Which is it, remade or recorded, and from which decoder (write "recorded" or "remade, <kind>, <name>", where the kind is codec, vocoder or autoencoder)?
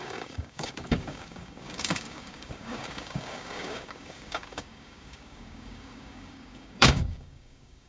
remade, codec, DAC